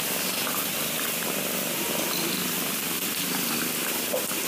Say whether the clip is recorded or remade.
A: recorded